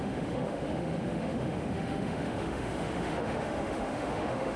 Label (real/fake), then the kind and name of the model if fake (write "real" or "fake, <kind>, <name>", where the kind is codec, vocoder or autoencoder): fake, autoencoder, DAC-VAE